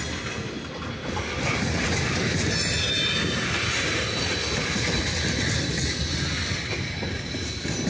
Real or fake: real